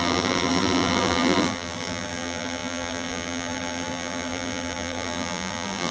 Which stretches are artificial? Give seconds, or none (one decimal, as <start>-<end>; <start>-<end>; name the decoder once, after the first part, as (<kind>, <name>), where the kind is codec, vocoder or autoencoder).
0.0-5.9 (vocoder, BigVGAN v2)